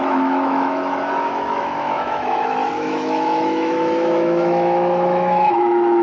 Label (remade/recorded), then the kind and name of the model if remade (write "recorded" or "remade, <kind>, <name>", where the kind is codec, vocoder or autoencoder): remade, autoencoder, DAC-VAE